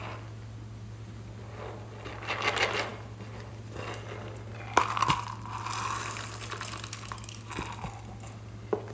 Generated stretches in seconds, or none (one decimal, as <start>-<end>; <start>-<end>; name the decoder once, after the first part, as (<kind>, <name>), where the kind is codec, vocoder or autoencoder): none